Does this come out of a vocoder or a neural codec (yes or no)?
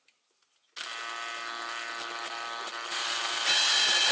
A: no